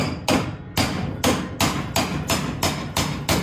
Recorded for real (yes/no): yes